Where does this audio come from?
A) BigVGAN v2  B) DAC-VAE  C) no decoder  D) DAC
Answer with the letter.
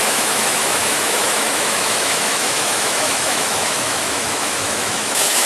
B